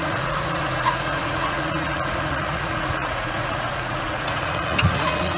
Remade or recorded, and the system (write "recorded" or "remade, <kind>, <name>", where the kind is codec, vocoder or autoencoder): remade, vocoder, Vocos